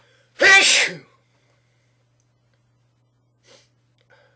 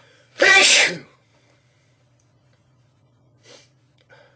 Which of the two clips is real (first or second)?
first